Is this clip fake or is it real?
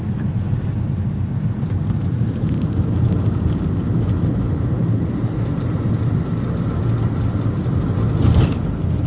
real